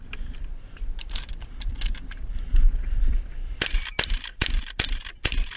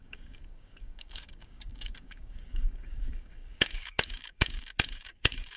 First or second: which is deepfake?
second